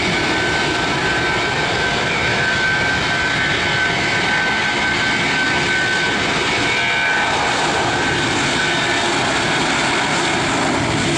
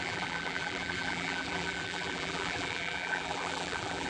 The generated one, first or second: second